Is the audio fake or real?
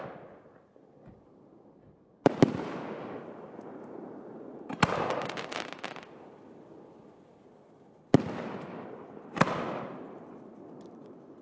real